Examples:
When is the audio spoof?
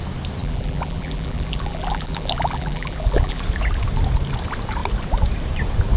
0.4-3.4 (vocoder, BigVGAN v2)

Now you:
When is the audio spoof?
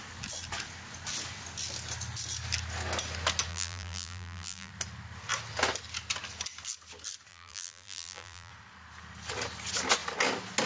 3.5-4.7 (vocoder, BigVGAN v2); 7.3-8.5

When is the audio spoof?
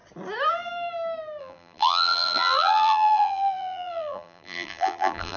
1.4-5.4 (vocoder, BigVGAN v2)